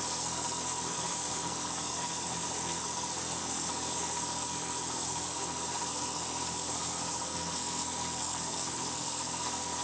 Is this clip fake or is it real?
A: fake